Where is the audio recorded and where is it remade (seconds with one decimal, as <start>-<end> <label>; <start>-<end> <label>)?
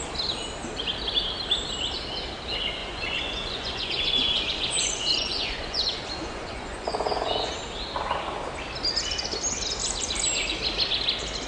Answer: 0.0-2.8 recorded; 2.8-7.5 remade; 7.5-11.5 recorded